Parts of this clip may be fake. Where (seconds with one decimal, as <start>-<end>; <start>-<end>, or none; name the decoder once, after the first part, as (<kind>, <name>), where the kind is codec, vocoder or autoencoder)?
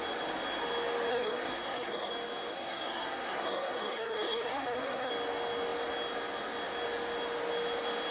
1.1-2.1 (codec, SNAC); 2.5-5.1